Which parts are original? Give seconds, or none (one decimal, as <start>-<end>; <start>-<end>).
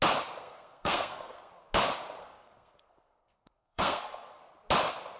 0.0-0.4; 1.5-2.2; 4.4-5.2